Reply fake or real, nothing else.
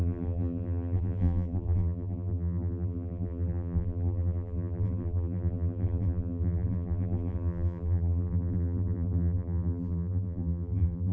fake